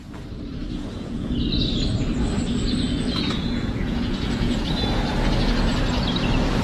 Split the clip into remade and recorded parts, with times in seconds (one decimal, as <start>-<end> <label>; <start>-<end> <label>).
0.0-0.6 recorded; 0.6-1.3 remade; 1.3-2.9 recorded; 2.9-4.6 remade; 4.6-6.6 recorded